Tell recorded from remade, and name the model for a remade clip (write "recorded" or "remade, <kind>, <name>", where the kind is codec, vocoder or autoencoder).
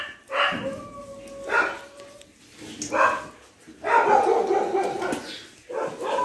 recorded